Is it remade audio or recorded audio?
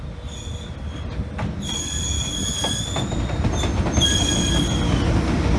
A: recorded